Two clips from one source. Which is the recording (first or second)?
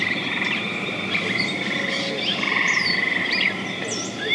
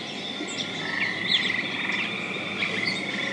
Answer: second